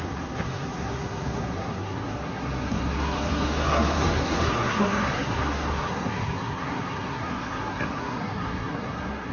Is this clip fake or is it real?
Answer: fake